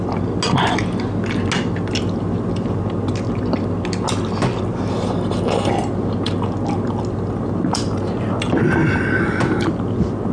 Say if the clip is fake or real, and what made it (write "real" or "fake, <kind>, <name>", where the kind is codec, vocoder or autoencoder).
real